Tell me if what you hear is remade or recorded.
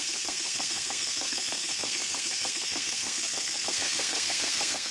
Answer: remade